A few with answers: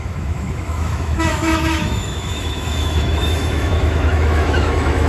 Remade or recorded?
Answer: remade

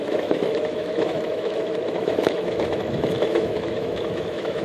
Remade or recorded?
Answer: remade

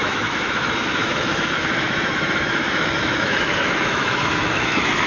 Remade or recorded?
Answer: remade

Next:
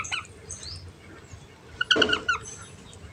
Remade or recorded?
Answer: recorded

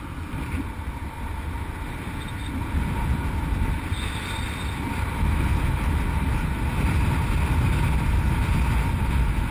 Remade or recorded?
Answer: recorded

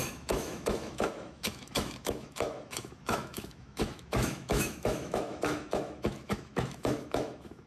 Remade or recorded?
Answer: remade